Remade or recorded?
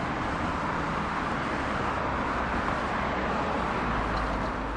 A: recorded